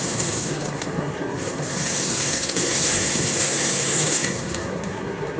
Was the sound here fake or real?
fake